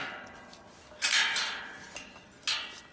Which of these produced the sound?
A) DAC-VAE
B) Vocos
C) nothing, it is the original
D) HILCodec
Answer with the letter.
C